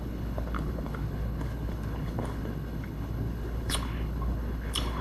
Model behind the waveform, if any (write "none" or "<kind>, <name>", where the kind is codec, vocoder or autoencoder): codec, HILCodec